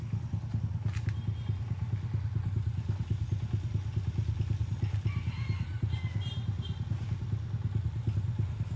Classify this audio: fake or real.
real